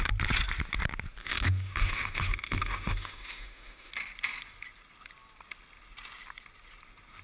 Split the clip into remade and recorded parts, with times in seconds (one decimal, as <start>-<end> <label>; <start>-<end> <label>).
0.0-1.2 recorded; 1.2-3.9 remade; 3.9-7.2 recorded

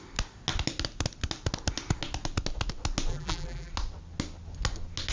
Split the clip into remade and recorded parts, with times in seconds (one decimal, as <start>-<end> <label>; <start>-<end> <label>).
0.0-3.1 recorded; 3.1-3.7 remade; 3.7-5.1 recorded